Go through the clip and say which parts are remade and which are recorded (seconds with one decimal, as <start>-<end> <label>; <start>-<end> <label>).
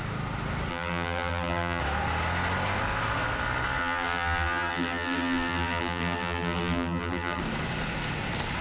0.0-0.7 recorded; 0.7-1.8 remade; 1.8-3.8 recorded; 3.8-7.4 remade; 7.4-8.6 recorded